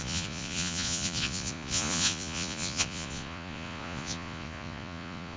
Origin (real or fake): fake